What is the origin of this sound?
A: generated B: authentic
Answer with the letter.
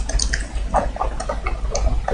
B